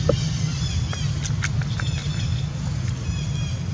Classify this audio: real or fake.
real